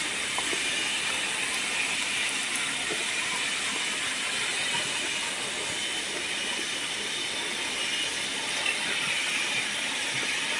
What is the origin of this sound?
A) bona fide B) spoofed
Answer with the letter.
A